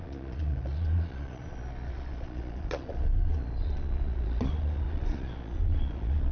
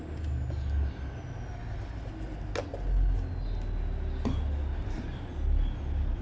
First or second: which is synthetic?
first